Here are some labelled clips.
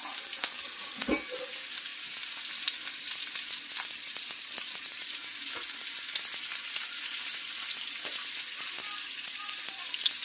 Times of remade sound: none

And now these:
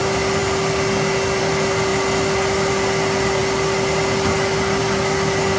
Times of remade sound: none